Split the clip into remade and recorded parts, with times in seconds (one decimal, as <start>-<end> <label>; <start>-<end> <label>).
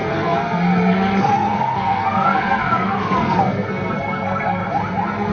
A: 0.0-4.6 remade; 4.6-5.3 recorded